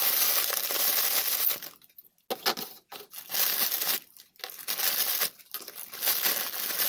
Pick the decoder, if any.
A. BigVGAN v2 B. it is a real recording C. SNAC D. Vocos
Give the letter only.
B